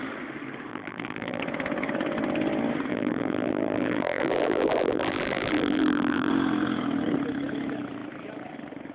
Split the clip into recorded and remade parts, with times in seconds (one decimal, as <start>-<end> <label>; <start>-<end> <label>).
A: 0.0-0.7 recorded; 0.7-1.4 remade; 1.4-2.9 recorded; 2.9-6.3 remade; 6.3-8.9 recorded